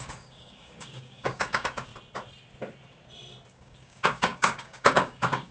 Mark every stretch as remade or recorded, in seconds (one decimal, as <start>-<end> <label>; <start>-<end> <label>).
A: 0.0-1.9 remade; 1.9-3.5 recorded; 3.5-5.5 remade